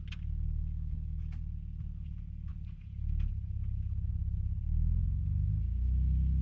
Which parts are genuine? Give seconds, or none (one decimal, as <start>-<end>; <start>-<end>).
0.0-0.6; 1.4-5.0; 5.5-6.4